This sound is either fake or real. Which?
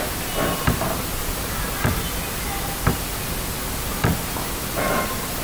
real